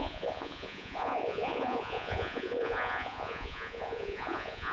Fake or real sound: fake